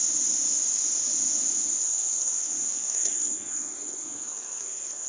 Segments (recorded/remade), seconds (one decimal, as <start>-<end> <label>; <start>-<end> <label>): 0.0-1.8 recorded; 1.8-5.1 remade